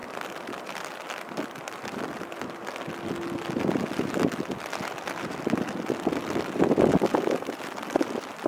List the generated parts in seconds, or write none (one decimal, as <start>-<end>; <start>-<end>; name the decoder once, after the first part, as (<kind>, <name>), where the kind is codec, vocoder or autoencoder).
none